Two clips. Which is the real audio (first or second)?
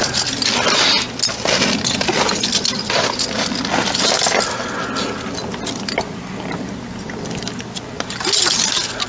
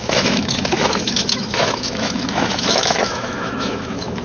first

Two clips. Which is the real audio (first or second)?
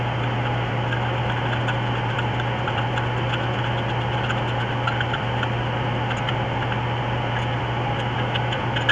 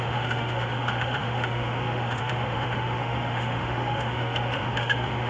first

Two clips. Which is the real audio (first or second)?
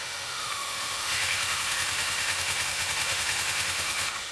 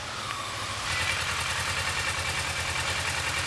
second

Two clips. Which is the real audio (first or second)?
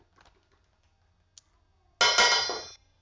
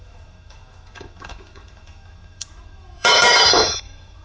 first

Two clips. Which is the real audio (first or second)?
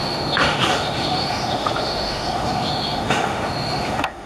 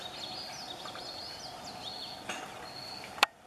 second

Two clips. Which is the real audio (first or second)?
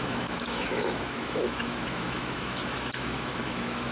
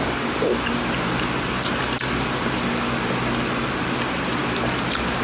second